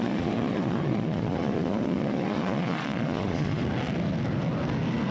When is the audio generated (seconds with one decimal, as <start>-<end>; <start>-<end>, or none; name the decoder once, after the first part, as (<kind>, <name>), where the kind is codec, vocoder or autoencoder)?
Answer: 0.0-3.6 (vocoder, Vocos)